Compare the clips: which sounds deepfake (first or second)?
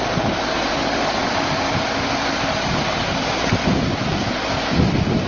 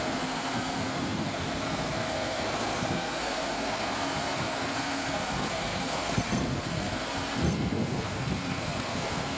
second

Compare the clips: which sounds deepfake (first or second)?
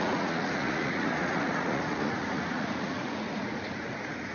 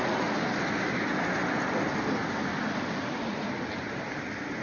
first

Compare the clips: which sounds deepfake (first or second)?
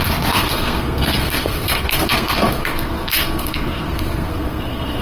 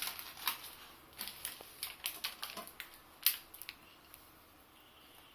first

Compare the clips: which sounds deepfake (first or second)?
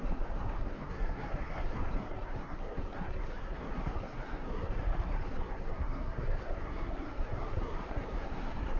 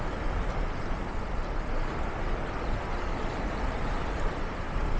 first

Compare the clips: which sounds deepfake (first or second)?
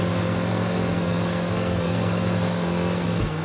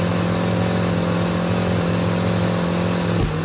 first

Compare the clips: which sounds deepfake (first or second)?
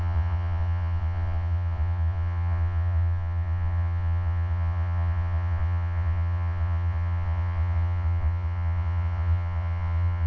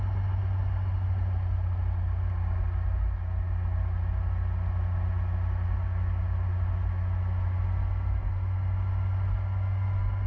first